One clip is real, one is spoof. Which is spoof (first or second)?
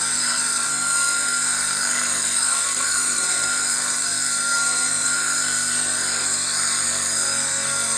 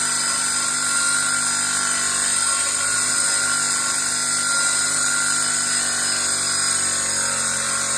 first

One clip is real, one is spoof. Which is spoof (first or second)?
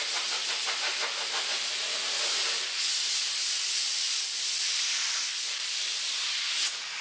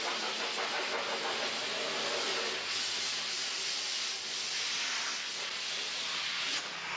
first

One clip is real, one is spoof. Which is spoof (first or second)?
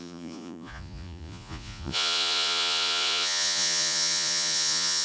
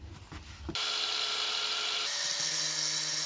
first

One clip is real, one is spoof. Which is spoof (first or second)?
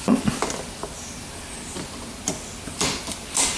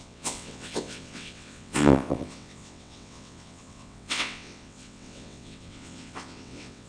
second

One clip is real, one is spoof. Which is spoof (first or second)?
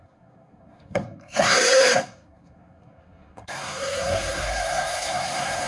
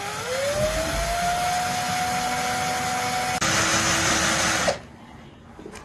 first